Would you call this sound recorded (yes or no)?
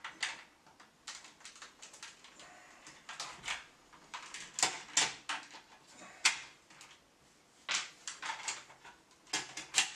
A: yes